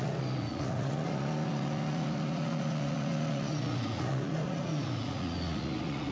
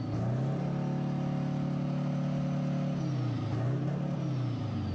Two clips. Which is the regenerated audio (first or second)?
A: first